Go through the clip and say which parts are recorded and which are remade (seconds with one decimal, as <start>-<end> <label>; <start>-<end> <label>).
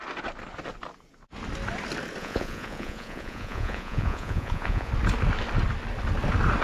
0.0-2.2 recorded; 2.2-4.9 remade; 4.9-6.6 recorded